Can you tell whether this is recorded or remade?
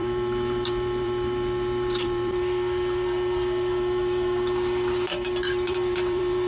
remade